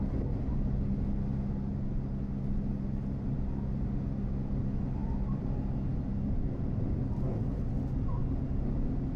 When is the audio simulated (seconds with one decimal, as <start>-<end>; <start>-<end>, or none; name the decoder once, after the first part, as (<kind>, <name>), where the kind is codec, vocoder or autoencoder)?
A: none

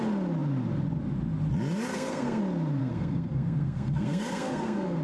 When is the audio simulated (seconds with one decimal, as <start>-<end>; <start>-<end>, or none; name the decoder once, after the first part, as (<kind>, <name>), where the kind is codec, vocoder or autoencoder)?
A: 1.9-2.4 (codec, SNAC); 2.8-5.0